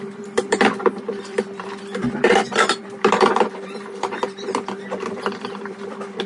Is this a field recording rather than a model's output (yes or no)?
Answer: no